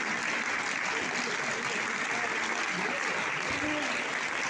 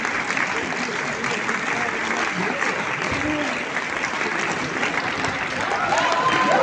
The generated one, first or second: second